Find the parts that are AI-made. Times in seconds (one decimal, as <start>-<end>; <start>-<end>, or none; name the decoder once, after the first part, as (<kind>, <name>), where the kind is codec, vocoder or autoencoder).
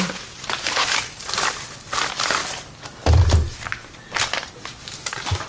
none